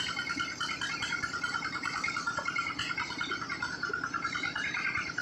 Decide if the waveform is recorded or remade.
remade